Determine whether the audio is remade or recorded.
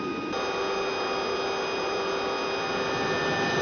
recorded